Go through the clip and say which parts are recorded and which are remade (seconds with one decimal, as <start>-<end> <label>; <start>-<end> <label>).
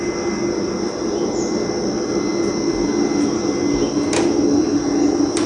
0.0-5.5 recorded